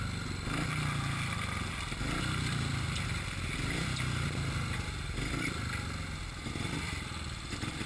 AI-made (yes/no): no